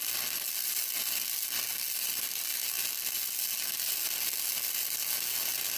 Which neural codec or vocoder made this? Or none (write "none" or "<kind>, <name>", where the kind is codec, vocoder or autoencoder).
none